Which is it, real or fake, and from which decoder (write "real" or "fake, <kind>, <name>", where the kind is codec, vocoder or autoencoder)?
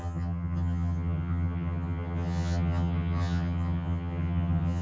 fake, vocoder, HiFi-GAN